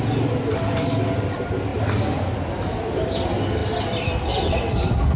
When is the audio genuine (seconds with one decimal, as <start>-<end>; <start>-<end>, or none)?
0.0-1.7; 3.0-3.6; 4.6-5.2